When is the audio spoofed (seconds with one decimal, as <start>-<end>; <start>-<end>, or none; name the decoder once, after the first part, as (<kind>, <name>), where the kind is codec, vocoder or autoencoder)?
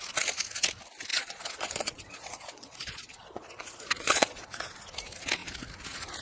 1.1-4.8 (vocoder, Vocos)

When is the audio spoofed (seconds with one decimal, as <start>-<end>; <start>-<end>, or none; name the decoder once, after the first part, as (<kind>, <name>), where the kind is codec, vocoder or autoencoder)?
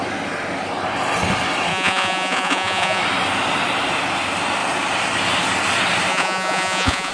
1.7-3.0 (vocoder, Vocos); 6.1-7.1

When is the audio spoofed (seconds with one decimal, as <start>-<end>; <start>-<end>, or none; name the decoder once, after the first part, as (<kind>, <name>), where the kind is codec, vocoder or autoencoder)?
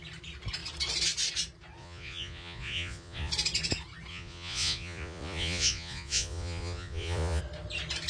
1.8-3.3 (vocoder, Vocos); 4.1-7.4